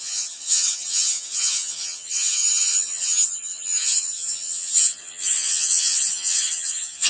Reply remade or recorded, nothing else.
remade